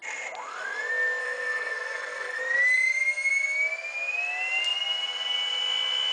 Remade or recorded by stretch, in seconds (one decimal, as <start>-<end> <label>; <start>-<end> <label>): 0.0-1.2 recorded; 1.2-2.4 remade; 2.4-6.1 recorded

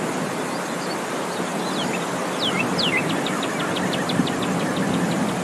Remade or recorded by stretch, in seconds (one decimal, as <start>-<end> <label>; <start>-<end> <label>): 0.0-5.4 recorded

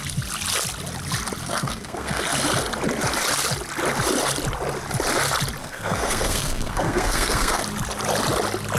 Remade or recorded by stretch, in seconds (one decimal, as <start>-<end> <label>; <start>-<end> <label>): 0.0-1.4 recorded; 1.4-2.2 remade; 2.2-5.6 recorded; 5.6-7.6 remade; 7.6-8.8 recorded

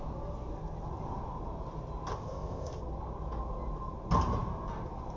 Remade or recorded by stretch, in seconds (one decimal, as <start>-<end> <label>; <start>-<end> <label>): 0.0-2.1 recorded; 2.1-2.8 remade; 2.8-5.2 recorded